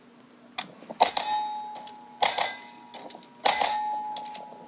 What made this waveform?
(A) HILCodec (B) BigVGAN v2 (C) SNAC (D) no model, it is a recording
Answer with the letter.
D